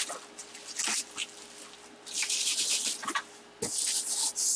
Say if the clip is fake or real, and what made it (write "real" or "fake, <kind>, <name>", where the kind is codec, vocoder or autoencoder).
real